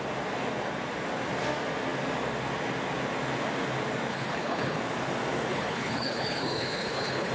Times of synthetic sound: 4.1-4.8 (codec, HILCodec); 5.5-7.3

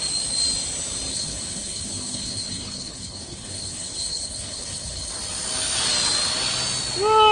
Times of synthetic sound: 1.1-5.1 (codec, HILCodec)

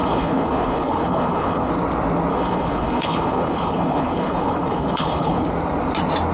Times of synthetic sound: 0.0-1.7 (codec, HILCodec); 2.3-5.5

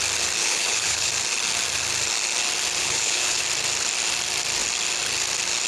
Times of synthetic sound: 0.4-1.1 (codec, HILCodec); 2.8-3.4

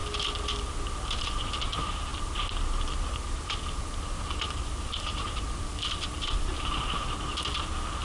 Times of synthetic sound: none

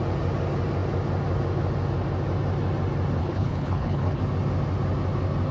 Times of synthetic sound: 3.2-4.2 (codec, HILCodec)

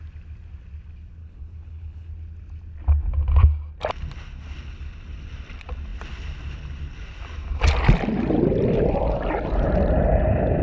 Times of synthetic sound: 1.2-2.1 (codec, HILCodec)